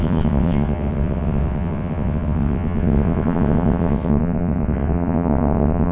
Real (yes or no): no